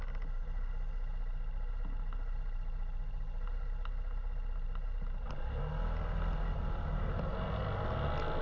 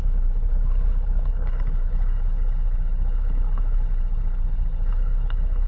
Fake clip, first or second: second